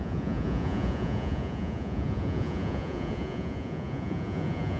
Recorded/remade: remade